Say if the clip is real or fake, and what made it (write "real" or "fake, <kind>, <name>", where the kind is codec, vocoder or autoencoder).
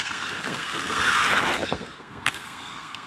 fake, codec, SNAC